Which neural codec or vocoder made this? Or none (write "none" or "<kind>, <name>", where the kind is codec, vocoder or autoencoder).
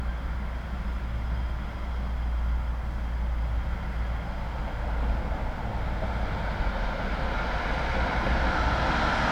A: none